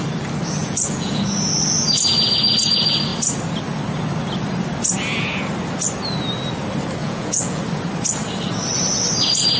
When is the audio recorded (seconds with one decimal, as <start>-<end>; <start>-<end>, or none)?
0.0-0.6; 1.2-7.0; 7.6-9.6